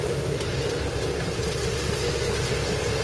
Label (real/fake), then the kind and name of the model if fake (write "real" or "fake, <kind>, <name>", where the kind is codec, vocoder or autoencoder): real